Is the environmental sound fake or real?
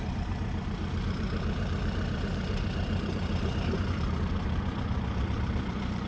fake